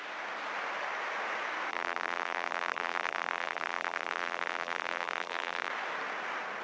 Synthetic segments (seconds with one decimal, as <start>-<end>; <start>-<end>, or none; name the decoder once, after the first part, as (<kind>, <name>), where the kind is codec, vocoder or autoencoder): 1.7-5.7 (vocoder, BigVGAN v2)